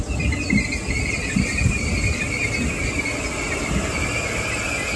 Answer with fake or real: real